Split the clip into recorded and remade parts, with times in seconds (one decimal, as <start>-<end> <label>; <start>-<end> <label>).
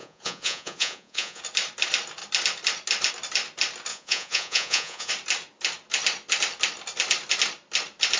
0.0-1.4 remade; 1.4-3.9 recorded; 3.9-5.1 remade; 5.1-8.2 recorded